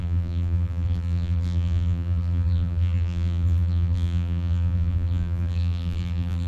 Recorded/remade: remade